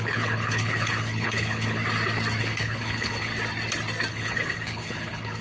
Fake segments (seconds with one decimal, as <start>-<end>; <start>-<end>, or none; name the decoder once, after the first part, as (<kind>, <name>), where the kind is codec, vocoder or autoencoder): 0.0-1.8 (codec, HILCodec); 2.4-3.3; 4.1-5.4